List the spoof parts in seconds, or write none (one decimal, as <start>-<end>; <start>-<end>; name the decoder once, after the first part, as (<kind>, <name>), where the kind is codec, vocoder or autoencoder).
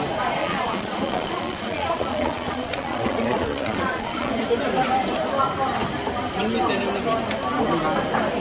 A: 0.4-4.3 (vocoder, Vocos)